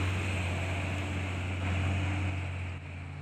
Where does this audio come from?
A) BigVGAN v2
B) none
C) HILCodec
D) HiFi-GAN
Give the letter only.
B